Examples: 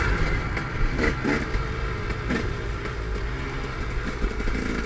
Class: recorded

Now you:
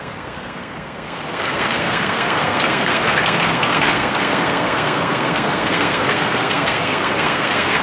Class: remade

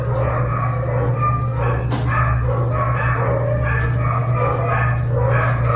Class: recorded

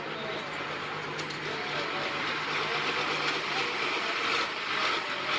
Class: recorded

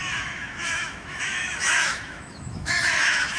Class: remade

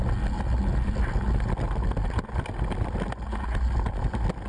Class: recorded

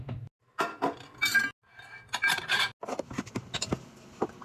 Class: recorded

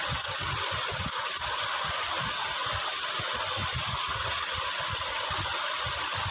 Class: recorded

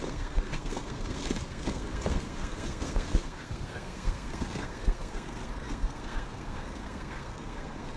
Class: remade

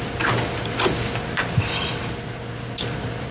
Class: recorded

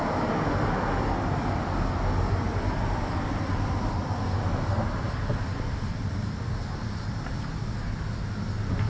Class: recorded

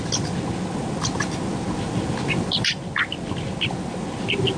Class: recorded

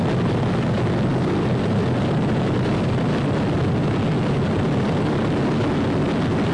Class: recorded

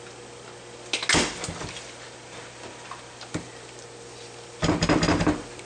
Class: recorded